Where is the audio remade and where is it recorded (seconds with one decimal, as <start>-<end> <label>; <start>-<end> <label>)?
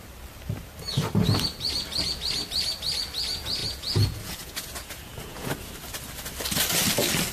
0.0-3.6 recorded; 3.6-5.5 remade; 5.5-7.3 recorded